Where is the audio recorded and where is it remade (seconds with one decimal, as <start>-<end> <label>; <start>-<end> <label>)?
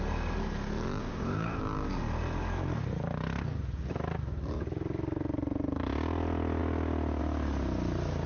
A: 0.0-1.0 recorded; 1.0-1.6 remade; 1.6-8.3 recorded